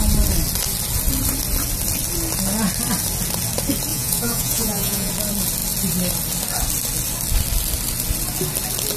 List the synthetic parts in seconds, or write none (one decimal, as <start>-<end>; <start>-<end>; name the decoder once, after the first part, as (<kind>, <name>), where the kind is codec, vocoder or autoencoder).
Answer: 3.9-5.1 (vocoder, Vocos)